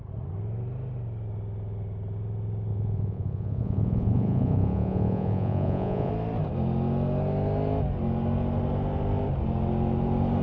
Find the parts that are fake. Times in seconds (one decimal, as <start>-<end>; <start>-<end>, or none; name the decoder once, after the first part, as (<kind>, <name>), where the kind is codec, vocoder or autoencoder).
2.7-6.1 (vocoder, Vocos)